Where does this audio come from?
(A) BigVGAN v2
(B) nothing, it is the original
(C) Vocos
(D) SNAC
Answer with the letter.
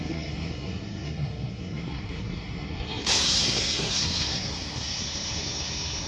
D